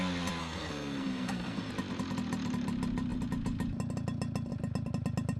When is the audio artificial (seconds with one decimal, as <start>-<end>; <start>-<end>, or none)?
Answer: 0.4-1.7